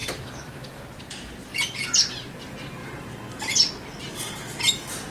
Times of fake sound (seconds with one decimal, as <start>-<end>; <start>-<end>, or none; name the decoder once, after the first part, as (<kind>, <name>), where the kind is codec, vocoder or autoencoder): 0.0-0.8 (autoencoder, DAC-VAE)